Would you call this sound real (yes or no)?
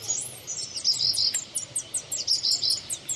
yes